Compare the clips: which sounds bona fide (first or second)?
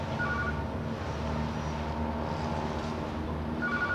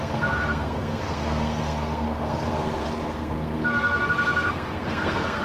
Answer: first